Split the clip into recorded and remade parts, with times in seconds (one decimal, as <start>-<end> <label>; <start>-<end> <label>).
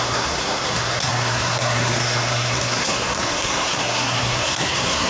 0.0-5.1 remade